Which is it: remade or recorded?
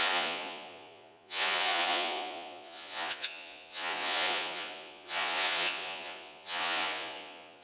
remade